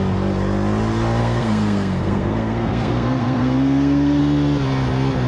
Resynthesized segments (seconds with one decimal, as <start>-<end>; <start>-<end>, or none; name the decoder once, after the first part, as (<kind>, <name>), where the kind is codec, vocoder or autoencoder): 1.2-4.2 (codec, SNAC)